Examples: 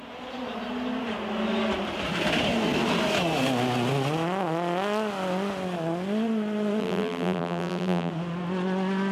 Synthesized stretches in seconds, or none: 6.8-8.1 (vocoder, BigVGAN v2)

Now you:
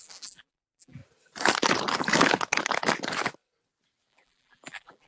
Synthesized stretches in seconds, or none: 0.0-1.0 (vocoder, BigVGAN v2); 4.1-5.1

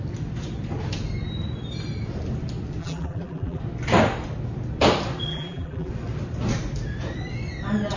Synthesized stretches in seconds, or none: 2.8-3.6 (vocoder, BigVGAN v2); 5.3-5.9

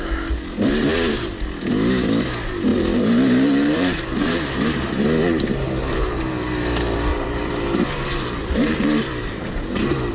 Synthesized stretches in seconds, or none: 2.7-4.9 (vocoder, BigVGAN v2); 7.1-9.5

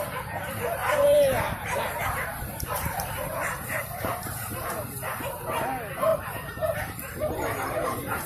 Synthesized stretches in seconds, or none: 0.8-5.2 (vocoder, BigVGAN v2); 6.1-8.3

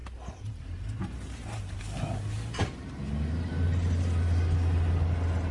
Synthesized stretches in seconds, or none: 0.0-1.8 (vocoder, BigVGAN v2)

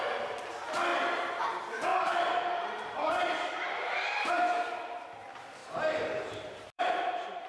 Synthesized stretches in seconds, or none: 1.9-4.3 (vocoder, BigVGAN v2); 5.6-7.5